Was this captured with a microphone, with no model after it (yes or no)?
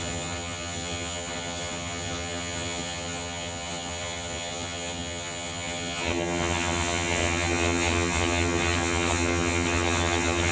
no